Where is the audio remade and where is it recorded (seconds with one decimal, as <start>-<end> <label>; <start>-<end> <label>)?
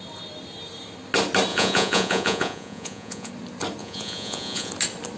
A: 0.0-1.5 recorded; 1.5-3.3 remade; 3.3-3.8 recorded; 3.8-4.7 remade; 4.7-5.2 recorded